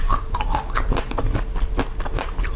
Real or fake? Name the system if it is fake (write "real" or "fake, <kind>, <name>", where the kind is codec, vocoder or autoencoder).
real